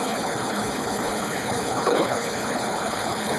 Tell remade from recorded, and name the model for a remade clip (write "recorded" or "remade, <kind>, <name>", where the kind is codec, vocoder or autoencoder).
remade, codec, HILCodec